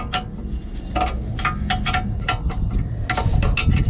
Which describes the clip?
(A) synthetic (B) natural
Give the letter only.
B